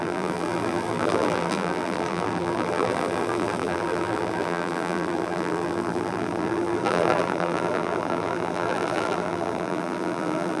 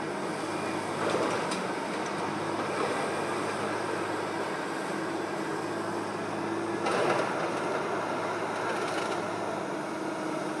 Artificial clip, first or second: first